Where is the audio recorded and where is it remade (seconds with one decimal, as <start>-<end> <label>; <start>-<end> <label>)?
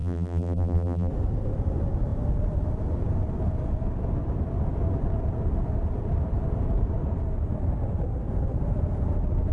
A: 0.0-1.1 remade; 1.1-9.5 recorded